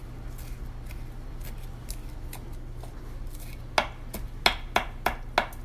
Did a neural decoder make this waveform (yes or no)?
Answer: no